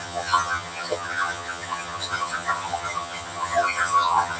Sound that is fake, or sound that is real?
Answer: fake